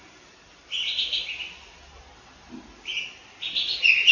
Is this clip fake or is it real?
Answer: real